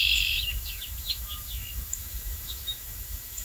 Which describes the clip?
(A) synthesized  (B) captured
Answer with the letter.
A